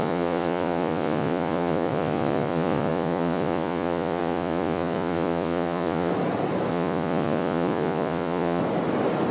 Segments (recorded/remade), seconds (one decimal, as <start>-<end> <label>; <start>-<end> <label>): 0.0-6.1 remade; 6.1-6.7 recorded; 6.7-8.6 remade; 8.6-9.3 recorded